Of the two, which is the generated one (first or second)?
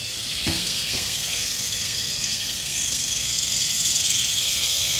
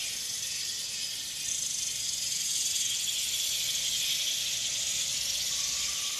first